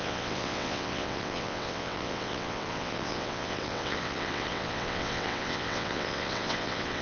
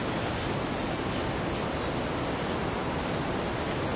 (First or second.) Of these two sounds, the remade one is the first